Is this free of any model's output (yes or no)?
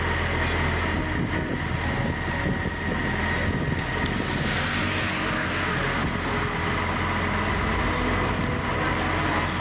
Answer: yes